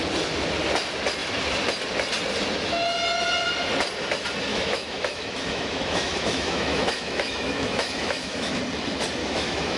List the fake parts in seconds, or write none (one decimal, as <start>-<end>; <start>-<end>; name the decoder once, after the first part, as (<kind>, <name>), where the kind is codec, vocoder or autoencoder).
4.5-8.6 (autoencoder, DAC-VAE); 9.2-9.8